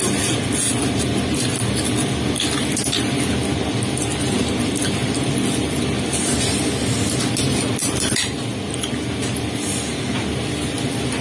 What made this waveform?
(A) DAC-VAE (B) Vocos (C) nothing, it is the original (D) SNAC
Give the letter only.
C